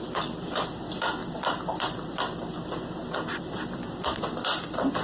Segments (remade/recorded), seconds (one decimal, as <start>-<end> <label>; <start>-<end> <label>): 0.0-5.0 recorded